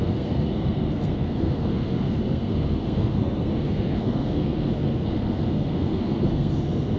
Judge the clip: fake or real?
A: fake